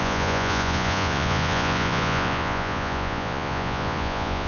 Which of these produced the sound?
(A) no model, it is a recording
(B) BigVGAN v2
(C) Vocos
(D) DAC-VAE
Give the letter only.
C